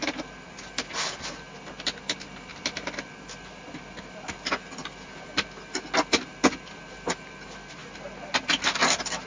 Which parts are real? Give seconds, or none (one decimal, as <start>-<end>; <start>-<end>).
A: 0.0-9.3